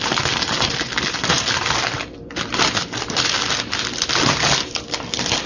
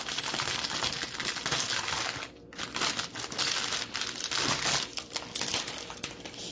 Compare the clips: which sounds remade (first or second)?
first